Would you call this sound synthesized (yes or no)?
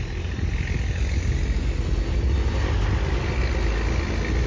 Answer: no